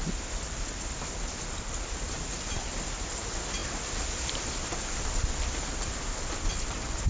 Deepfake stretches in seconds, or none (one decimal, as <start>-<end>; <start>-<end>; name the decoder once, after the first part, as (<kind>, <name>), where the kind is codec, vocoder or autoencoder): 0.0-7.1 (vocoder, BigVGAN v2)